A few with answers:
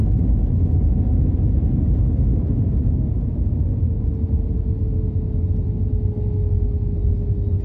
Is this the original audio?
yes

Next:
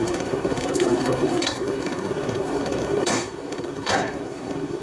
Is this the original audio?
no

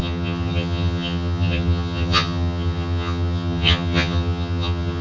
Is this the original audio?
no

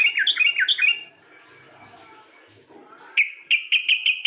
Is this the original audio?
yes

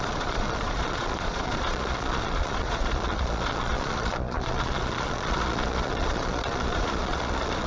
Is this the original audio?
no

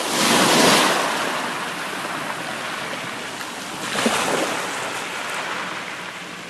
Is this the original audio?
yes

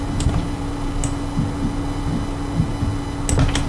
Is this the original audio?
yes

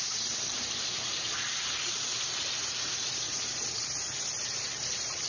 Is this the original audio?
no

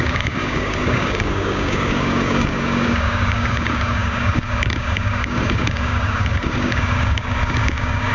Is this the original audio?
no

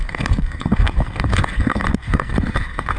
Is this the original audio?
no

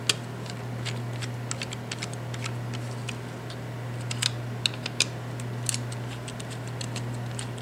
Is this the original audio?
yes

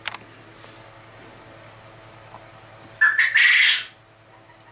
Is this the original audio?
yes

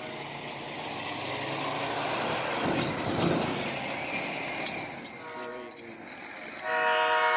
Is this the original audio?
yes